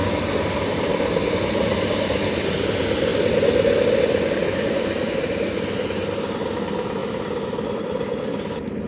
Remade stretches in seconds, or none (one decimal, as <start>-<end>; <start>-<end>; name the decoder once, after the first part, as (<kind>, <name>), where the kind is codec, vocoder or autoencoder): none